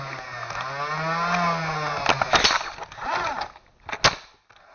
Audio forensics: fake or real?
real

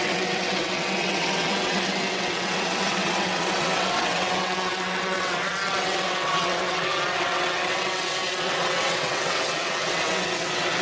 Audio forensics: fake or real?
fake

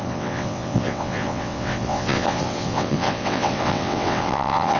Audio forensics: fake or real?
fake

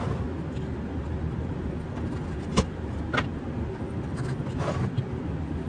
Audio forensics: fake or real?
real